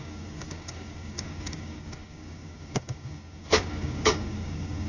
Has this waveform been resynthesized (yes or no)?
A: yes